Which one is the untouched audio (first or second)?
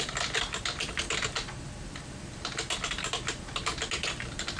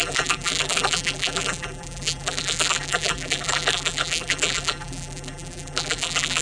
first